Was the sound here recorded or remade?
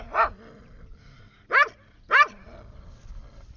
recorded